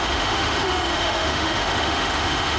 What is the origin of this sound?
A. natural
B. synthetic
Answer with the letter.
B